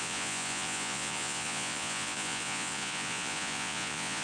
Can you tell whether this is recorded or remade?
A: remade